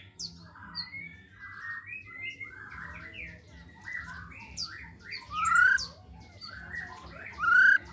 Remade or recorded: recorded